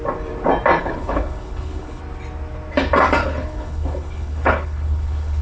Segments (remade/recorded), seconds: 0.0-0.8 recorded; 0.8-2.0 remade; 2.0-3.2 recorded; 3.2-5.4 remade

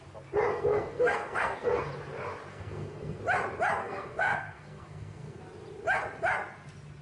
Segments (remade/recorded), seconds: 0.0-0.5 recorded; 0.5-1.9 remade; 1.9-2.5 recorded; 2.5-3.2 remade; 3.2-3.8 recorded; 3.8-5.4 remade; 5.4-7.0 recorded

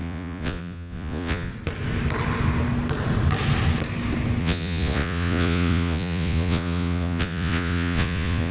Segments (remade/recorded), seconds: 0.0-1.5 remade; 1.5-4.4 recorded; 4.4-8.5 remade

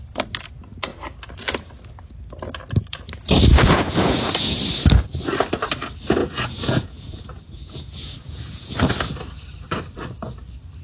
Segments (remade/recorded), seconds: 0.0-3.5 recorded; 3.5-4.6 remade; 4.6-6.2 recorded; 6.2-8.9 remade; 8.9-10.8 recorded

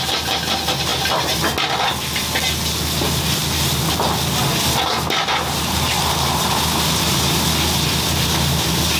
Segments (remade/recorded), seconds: 0.0-9.0 recorded

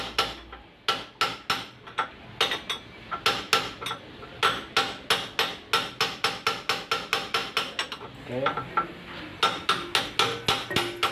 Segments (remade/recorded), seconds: 0.0-11.1 recorded

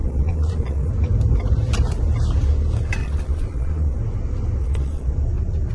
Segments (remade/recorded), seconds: 0.0-0.9 remade; 0.9-3.0 recorded; 3.0-4.0 remade; 4.0-4.6 recorded; 4.6-5.1 remade; 5.1-5.7 recorded